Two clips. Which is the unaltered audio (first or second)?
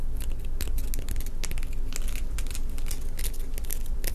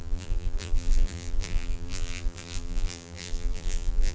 first